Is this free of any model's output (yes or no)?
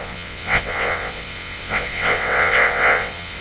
no